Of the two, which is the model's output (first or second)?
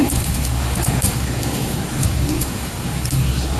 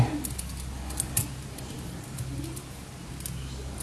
first